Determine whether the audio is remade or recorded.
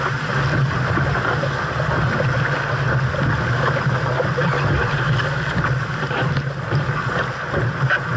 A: recorded